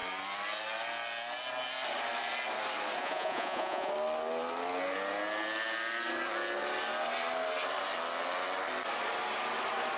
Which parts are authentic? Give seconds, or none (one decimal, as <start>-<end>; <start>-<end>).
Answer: 0.0-3.0; 3.9-10.0